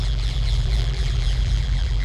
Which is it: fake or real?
fake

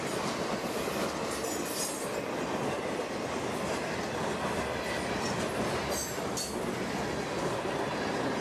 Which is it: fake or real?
real